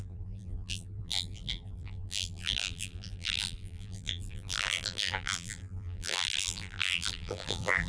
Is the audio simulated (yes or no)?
yes